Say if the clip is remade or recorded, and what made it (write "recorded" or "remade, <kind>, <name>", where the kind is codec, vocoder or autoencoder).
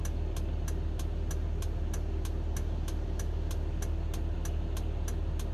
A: recorded